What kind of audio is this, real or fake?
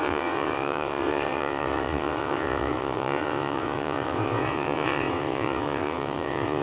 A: fake